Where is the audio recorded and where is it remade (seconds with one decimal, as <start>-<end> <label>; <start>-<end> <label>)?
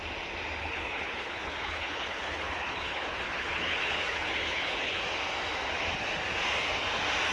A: 0.0-0.6 recorded; 0.6-5.0 remade; 5.0-7.3 recorded